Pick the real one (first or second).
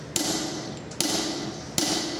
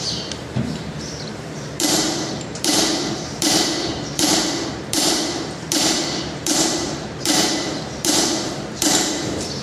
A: first